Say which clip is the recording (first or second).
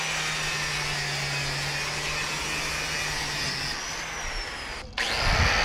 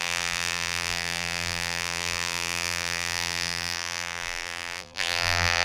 first